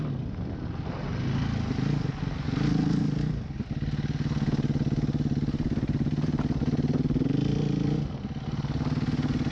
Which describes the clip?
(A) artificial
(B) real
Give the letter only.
B